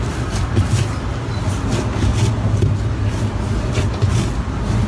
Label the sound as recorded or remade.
recorded